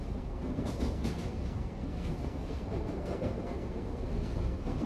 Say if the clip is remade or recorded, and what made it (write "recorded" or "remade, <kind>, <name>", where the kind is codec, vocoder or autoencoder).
remade, codec, SNAC